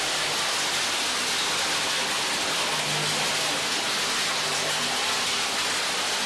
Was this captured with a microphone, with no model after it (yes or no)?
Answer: yes